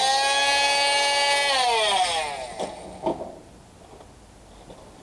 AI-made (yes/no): no